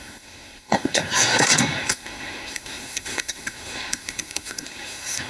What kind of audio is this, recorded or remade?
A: remade